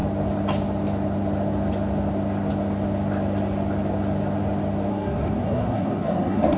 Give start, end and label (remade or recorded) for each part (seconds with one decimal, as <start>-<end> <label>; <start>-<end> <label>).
0.0-4.9 recorded; 4.9-6.6 remade